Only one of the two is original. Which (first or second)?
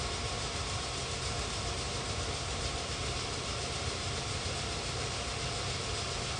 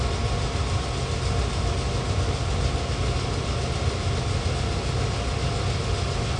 second